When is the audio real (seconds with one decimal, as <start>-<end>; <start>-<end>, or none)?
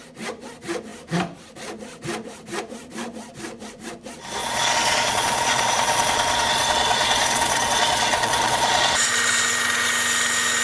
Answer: 0.0-4.4; 9.1-10.6